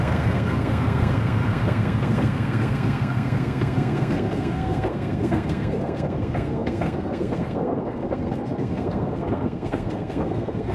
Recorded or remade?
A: remade